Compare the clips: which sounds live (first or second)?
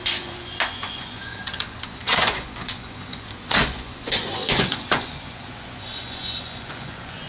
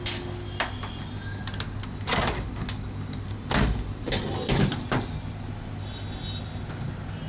second